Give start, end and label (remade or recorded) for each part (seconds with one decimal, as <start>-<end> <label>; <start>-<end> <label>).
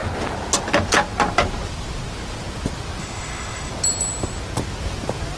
0.0-3.0 recorded; 3.0-3.7 remade; 3.7-5.4 recorded